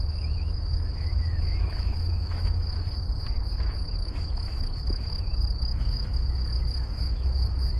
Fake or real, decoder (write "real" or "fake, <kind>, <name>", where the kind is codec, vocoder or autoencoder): fake, autoencoder, DAC-VAE